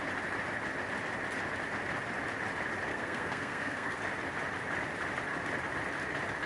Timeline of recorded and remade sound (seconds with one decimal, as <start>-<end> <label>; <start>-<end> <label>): 0.0-2.9 recorded; 2.9-4.0 remade; 4.0-6.5 recorded